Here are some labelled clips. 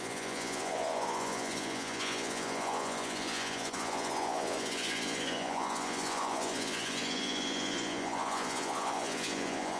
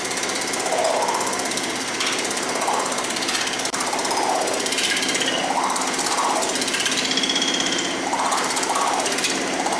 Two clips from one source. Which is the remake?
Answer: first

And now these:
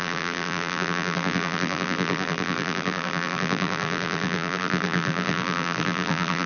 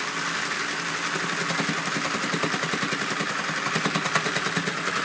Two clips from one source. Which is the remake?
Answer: first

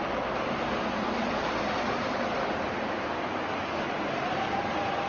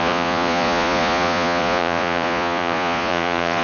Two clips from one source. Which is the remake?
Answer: second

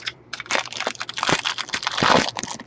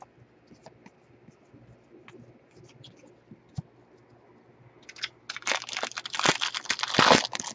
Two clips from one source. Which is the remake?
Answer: first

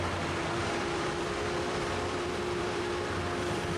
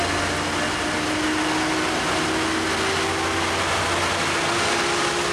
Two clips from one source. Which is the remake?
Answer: first